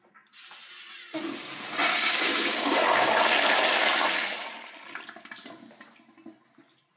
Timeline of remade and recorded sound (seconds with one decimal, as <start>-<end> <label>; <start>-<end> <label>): 0.0-1.9 recorded; 1.9-3.2 remade; 3.2-7.0 recorded